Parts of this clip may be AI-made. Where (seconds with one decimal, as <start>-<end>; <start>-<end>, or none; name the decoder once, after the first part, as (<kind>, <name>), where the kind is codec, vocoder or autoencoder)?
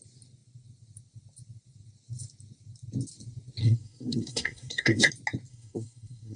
3.6-5.1 (codec, SNAC); 5.5-6.4